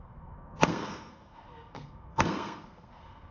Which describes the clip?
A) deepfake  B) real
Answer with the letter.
A